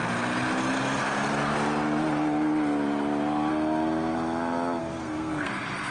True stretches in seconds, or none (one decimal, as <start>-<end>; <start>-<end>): 0.0-4.8; 5.5-5.9

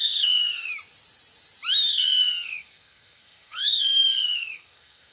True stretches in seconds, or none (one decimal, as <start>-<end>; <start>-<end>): 0.7-1.9

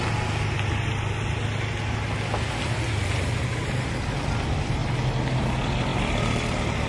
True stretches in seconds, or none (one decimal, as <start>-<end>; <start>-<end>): 0.0-6.9